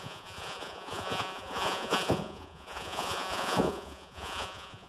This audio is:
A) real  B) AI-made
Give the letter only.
B